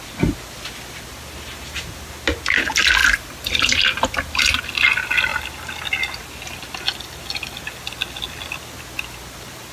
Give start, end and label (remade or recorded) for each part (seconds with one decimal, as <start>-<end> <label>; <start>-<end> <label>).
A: 0.0-3.0 recorded; 3.0-4.6 remade; 4.6-9.7 recorded